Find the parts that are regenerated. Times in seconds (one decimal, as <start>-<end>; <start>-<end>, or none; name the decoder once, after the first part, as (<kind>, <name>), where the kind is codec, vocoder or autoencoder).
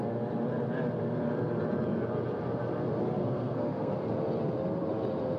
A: 3.2-3.9 (codec, SNAC)